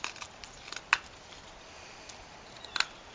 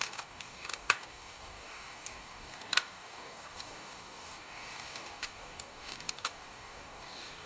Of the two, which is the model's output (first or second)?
second